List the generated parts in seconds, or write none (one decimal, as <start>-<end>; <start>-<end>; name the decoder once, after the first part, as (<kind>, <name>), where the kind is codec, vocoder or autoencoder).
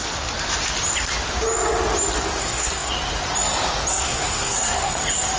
2.4-2.9 (codec, SNAC); 3.9-4.9